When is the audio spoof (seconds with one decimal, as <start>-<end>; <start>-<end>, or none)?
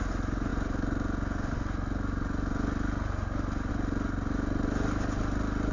none